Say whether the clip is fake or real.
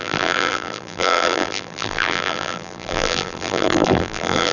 fake